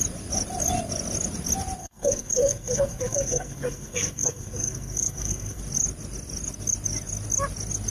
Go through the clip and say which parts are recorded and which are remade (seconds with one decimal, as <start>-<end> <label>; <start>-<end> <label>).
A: 0.0-1.8 recorded; 1.8-5.6 remade; 5.6-7.9 recorded